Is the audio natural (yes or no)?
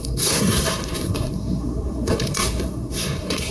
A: no